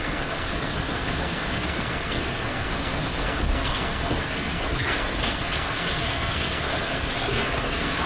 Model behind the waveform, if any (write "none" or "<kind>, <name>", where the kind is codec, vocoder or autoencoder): codec, SNAC